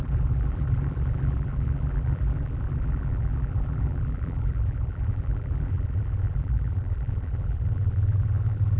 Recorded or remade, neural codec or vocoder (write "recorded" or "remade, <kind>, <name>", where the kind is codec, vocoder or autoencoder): remade, vocoder, BigVGAN v2